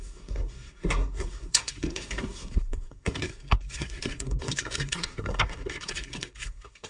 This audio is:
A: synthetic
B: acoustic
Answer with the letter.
A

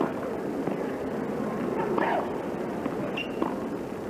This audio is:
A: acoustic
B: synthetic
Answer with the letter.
A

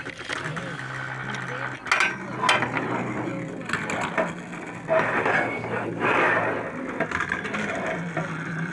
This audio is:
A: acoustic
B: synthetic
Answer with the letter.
A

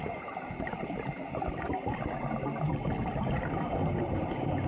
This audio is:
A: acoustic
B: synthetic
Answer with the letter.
A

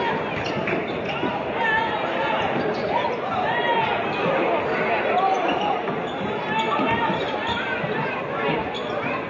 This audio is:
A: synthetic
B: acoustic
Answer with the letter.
B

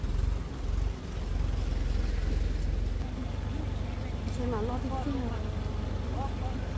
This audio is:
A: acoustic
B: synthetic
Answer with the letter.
A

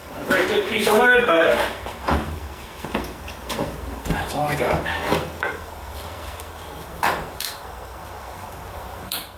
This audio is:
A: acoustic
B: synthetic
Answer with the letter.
B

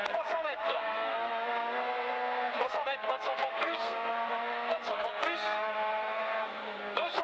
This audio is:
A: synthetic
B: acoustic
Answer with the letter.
A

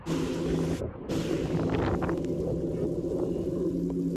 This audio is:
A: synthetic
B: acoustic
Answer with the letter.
B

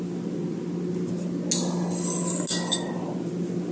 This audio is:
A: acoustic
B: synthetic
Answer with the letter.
A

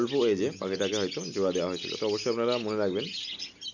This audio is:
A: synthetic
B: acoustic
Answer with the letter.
B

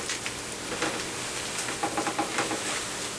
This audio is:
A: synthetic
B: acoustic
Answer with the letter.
B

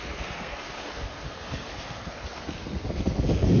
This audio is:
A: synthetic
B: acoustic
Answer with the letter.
A